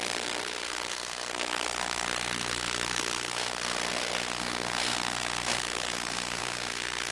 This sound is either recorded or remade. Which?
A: remade